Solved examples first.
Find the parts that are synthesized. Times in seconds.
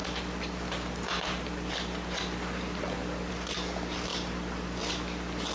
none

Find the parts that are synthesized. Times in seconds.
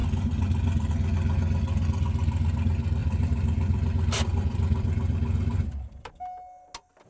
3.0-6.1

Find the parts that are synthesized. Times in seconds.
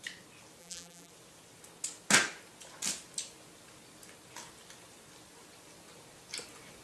0.6-1.1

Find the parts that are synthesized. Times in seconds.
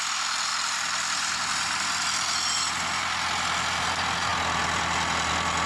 0.5-2.7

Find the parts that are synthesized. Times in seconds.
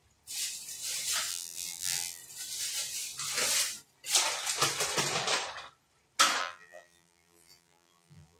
1.3-2.2; 6.4-8.4